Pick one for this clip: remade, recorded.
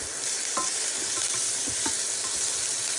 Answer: remade